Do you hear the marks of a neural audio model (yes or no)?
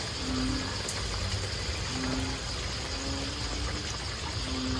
no